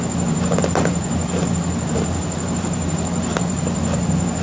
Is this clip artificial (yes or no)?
no